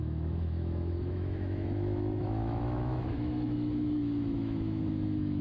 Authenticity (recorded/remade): remade